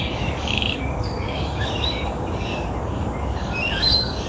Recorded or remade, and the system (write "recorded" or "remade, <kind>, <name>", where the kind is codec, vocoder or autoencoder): remade, codec, DAC